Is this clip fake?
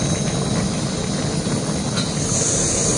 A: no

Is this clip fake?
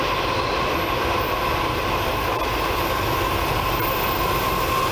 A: no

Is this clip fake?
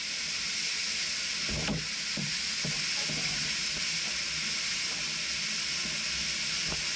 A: no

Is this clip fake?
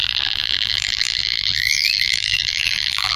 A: yes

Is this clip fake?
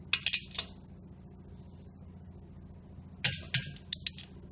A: no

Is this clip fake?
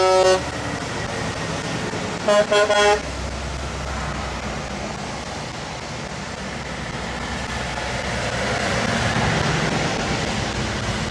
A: no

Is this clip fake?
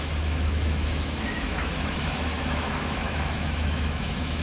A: yes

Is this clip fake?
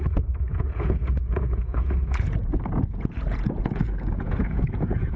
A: yes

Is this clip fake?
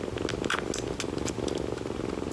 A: no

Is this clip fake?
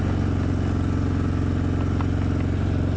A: no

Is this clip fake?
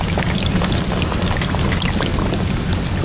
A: no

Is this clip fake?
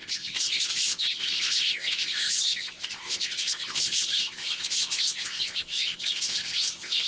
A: yes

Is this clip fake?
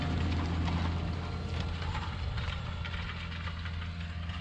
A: no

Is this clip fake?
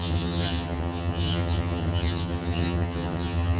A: yes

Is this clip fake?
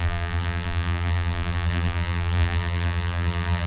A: yes